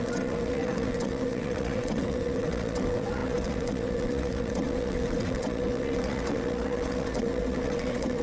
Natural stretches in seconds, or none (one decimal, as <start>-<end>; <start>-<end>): none